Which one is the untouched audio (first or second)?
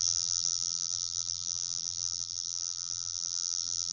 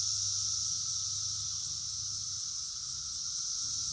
second